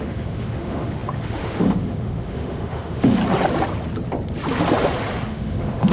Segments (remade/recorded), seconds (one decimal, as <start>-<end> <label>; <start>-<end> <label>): 0.0-3.2 remade; 3.2-5.3 recorded; 5.3-5.9 remade